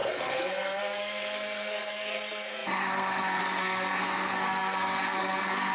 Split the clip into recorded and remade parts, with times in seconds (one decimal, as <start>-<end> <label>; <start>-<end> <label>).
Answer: 0.0-5.7 remade